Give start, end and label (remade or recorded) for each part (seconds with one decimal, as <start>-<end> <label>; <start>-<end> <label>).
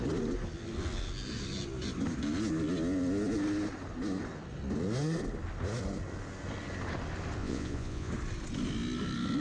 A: 0.0-7.4 recorded; 7.4-8.1 remade; 8.1-9.4 recorded